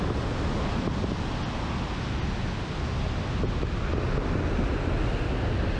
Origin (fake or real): real